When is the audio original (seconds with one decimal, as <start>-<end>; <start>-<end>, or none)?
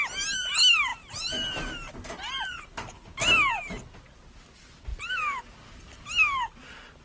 0.0-7.0